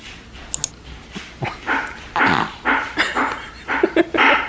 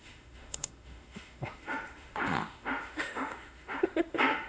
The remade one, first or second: second